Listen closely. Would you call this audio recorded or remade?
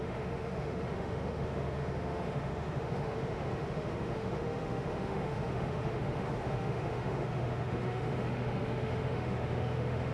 remade